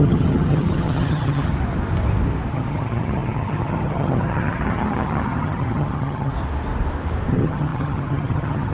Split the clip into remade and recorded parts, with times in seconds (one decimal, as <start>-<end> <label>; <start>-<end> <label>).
0.0-1.5 remade; 1.5-2.5 recorded; 2.5-6.3 remade; 6.3-7.3 recorded; 7.3-8.7 remade